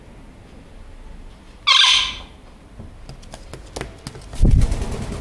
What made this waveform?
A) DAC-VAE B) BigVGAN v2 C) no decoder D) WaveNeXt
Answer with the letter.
C